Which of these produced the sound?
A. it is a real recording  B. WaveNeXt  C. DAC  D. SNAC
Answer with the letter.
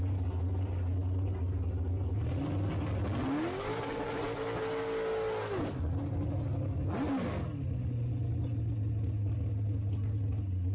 A